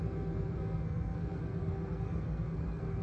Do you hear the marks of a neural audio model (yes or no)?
yes